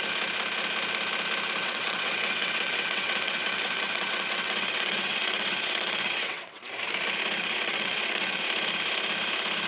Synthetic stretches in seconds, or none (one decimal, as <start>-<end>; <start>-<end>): 1.6-6.6; 7.4-8.4